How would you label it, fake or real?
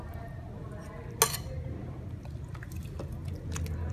real